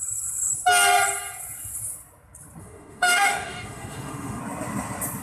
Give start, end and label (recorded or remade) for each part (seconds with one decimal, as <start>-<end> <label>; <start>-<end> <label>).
0.0-2.6 recorded; 2.6-4.4 remade; 4.4-5.2 recorded